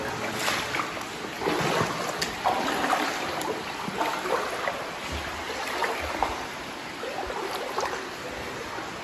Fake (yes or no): no